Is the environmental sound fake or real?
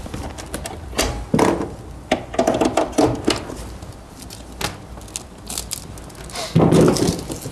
real